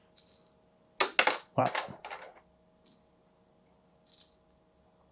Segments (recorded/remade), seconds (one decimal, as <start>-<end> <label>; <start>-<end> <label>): 0.0-5.1 recorded